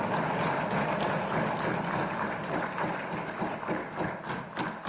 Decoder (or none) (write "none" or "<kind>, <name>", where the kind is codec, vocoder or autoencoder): none